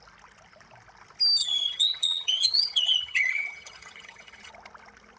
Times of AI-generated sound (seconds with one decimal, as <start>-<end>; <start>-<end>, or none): 1.4-4.5